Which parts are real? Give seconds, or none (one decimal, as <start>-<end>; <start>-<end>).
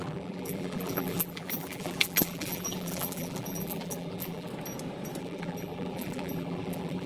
4.5-5.2